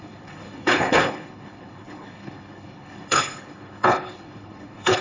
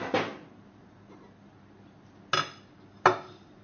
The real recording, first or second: second